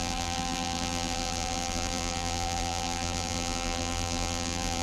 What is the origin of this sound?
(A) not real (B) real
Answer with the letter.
A